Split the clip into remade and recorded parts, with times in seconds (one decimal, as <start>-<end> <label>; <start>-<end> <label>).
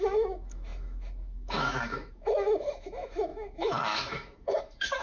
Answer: 0.0-5.0 remade